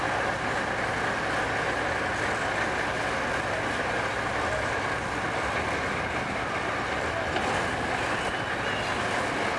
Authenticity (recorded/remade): recorded